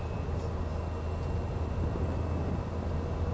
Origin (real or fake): real